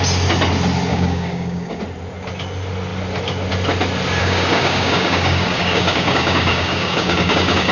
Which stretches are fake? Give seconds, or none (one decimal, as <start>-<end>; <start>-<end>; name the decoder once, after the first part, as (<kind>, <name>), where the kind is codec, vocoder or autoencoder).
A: 0.9-1.8 (codec, DAC); 4.2-7.7